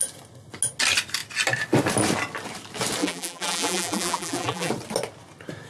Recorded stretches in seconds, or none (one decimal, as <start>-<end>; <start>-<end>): 0.0-3.0; 4.7-5.7